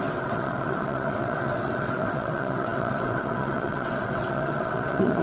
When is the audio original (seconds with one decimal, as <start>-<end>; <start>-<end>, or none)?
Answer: none